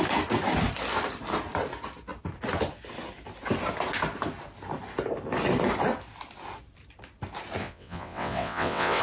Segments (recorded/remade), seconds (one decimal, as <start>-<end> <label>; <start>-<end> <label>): 0.0-7.6 recorded; 7.6-9.0 remade